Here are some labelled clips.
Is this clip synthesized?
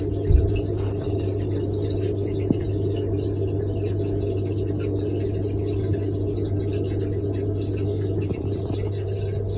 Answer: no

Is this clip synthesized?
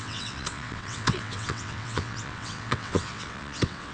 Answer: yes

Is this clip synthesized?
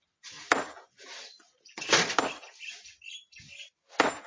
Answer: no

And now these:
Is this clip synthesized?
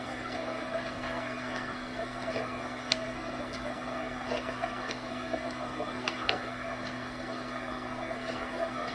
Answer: yes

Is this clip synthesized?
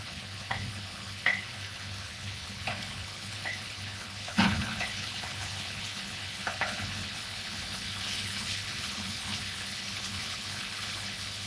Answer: yes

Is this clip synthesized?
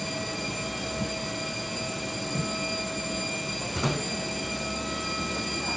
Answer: no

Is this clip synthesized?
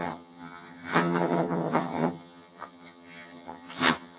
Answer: yes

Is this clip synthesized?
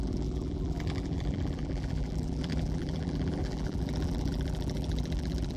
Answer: yes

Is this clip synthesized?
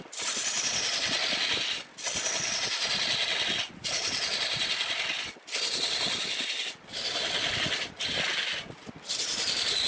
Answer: no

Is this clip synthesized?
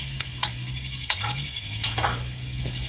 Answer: yes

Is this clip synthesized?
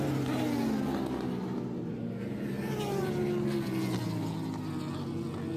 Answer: no